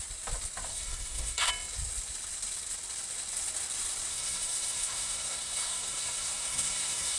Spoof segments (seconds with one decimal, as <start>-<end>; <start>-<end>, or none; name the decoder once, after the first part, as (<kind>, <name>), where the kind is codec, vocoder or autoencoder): 0.7-1.5 (codec, SNAC); 4.1-7.2

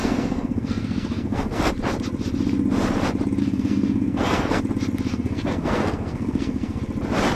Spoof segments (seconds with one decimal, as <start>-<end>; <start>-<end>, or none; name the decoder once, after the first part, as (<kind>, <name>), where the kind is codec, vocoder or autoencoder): 0.0-1.7 (codec, SNAC); 3.4-4.6; 5.1-6.8

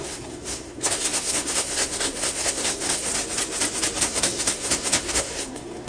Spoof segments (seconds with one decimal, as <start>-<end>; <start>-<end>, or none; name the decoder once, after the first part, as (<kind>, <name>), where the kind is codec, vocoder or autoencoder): 0.0-3.1 (codec, SNAC); 4.0-5.9

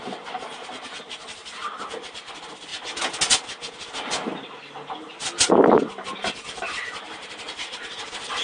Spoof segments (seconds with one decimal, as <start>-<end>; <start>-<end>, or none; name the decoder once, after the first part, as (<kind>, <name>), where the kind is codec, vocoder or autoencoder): 1.4-2.3 (vocoder, BigVGAN v2); 5.0-8.0

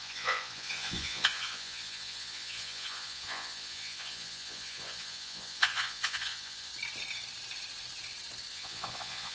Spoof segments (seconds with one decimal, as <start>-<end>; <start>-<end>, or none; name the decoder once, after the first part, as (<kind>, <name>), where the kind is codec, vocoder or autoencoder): 0.0-6.7 (vocoder, Vocos); 8.5-9.3

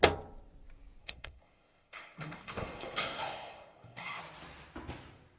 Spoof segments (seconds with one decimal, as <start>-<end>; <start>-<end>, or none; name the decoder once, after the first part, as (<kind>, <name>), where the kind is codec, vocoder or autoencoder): 1.0-4.2 (codec, SNAC)

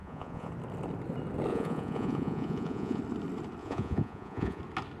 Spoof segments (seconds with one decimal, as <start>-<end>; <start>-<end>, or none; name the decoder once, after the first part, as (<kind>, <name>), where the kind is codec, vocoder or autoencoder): 0.0-0.5 (vocoder, Vocos); 1.5-3.0; 3.6-4.6

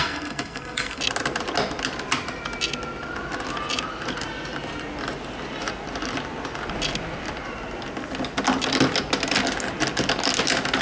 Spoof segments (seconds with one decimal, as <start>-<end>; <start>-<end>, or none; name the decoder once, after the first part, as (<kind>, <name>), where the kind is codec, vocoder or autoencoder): 0.0-1.0 (codec, SNAC)